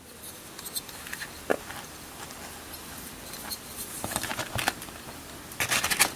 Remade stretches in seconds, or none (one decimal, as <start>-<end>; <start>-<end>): none